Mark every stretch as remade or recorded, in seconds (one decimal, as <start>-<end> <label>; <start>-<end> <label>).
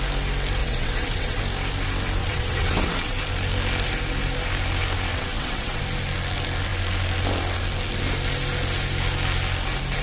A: 0.0-0.6 recorded; 0.6-1.4 remade; 1.4-2.2 recorded; 2.2-3.2 remade; 3.2-5.1 recorded; 5.1-5.8 remade; 5.8-10.0 recorded